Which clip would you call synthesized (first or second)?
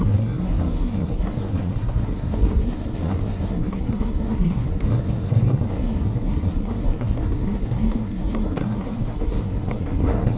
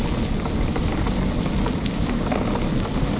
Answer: first